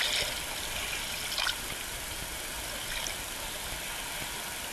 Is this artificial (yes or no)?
no